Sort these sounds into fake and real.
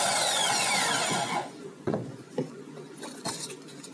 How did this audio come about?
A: fake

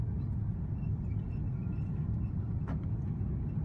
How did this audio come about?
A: real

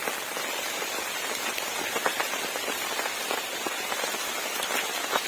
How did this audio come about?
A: real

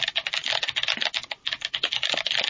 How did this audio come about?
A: real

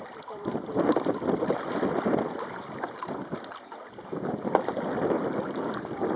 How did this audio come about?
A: real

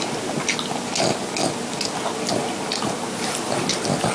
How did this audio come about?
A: real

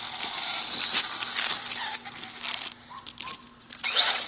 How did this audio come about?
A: real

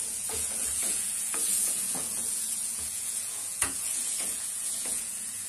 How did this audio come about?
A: fake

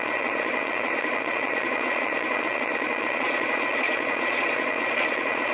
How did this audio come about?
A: fake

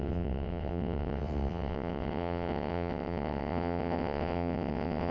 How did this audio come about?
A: fake